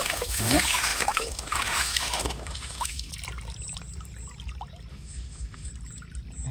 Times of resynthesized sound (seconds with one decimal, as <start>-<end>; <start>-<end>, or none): 0.0-3.1; 4.9-5.7